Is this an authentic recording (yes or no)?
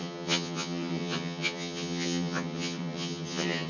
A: no